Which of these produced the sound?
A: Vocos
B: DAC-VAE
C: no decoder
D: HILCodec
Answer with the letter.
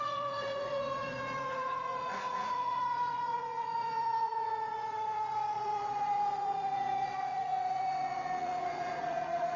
A